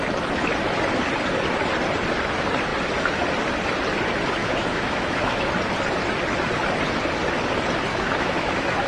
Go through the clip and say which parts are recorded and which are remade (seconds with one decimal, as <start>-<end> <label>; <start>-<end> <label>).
0.0-4.4 recorded; 4.4-5.5 remade; 5.5-7.9 recorded; 7.9-8.9 remade